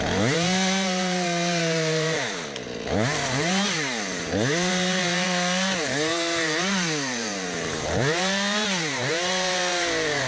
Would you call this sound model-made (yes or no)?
yes